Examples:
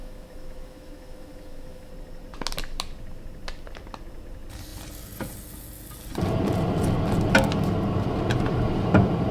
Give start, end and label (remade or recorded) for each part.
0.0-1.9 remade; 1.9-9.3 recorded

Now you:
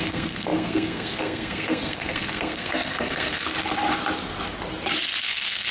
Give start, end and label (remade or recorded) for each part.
0.0-3.5 remade; 3.5-5.2 recorded; 5.2-5.7 remade

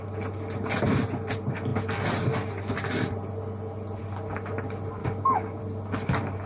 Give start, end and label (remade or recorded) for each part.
0.0-5.0 recorded; 5.0-5.6 remade; 5.6-6.5 recorded